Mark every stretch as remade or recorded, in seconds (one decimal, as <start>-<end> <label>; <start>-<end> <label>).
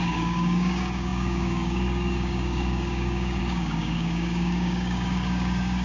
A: 0.0-5.8 remade